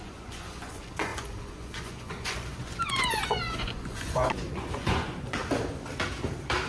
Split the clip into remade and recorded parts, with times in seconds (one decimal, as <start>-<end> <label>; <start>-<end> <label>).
0.0-5.4 remade; 5.4-6.7 recorded